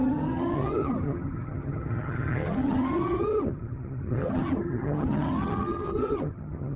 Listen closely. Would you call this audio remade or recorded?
remade